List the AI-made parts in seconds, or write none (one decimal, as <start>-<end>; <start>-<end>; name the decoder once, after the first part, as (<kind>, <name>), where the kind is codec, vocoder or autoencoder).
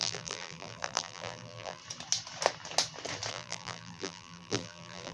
0.0-1.8 (vocoder, BigVGAN v2); 3.3-5.1